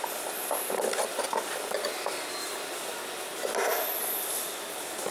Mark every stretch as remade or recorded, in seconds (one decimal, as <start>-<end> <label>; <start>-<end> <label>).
0.0-5.1 recorded